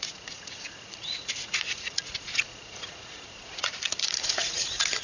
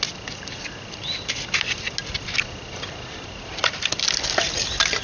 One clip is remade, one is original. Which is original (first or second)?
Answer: second